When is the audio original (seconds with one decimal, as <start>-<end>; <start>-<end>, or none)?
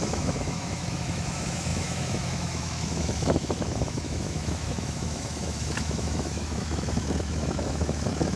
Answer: none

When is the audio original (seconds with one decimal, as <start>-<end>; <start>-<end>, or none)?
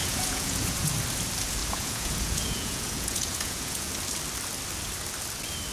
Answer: 0.9-1.6; 3.9-5.7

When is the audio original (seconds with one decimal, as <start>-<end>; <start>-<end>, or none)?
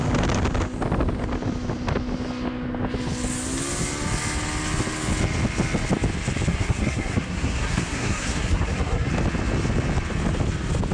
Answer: 0.0-6.5; 9.1-10.9